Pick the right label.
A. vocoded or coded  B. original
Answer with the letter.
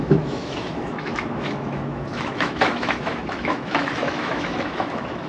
A